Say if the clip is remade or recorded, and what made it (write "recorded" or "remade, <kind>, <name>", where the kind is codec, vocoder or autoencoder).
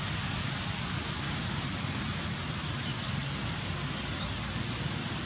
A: recorded